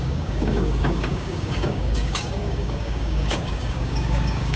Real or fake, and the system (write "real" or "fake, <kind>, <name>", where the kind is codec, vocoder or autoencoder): fake, codec, DAC